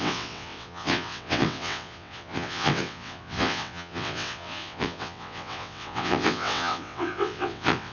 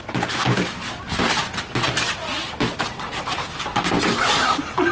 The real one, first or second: second